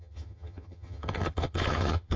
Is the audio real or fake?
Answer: fake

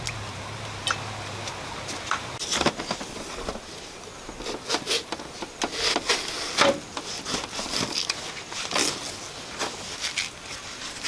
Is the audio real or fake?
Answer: real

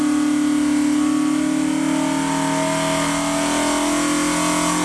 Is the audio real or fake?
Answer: real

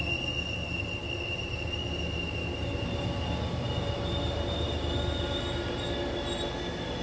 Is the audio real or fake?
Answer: real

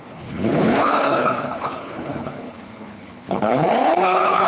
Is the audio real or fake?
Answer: fake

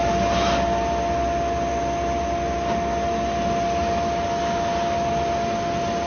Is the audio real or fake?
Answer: real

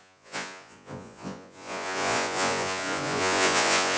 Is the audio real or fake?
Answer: fake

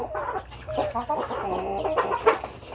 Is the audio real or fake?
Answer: real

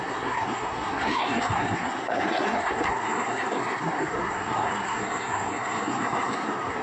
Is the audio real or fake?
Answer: fake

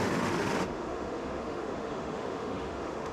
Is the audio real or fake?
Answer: fake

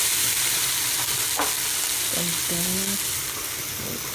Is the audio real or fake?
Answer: real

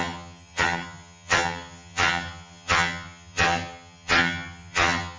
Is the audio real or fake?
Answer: fake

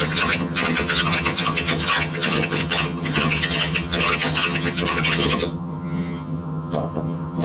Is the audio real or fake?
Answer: fake